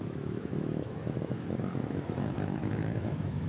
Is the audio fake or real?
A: fake